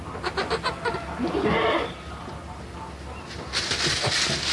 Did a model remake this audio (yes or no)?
no